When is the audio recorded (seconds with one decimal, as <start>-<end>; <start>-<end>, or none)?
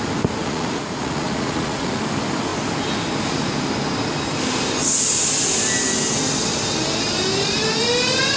0.0-0.4; 2.0-8.4